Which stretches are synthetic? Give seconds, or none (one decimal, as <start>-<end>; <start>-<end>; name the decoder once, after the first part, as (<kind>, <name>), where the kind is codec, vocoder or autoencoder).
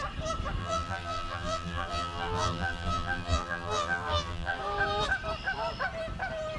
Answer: 0.6-4.6 (vocoder, BigVGAN v2)